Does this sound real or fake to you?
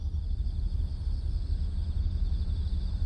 real